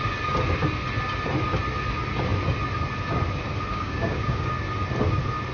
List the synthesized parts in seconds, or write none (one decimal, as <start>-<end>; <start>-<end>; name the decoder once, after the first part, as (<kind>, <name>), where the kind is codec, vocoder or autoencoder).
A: 3.7-4.5 (codec, DAC)